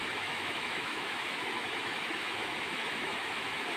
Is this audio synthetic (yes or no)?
yes